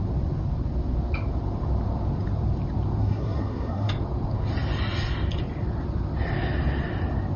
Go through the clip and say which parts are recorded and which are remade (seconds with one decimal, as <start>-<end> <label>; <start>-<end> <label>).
0.0-3.0 recorded; 3.0-3.9 remade; 3.9-7.4 recorded